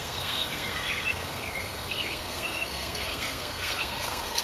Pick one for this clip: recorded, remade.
remade